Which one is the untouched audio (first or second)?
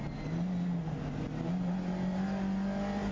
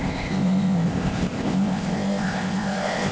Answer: first